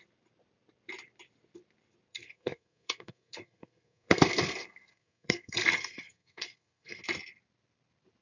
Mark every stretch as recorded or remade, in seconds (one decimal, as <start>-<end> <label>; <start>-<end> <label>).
0.0-2.1 recorded; 2.1-7.0 remade; 7.0-8.2 recorded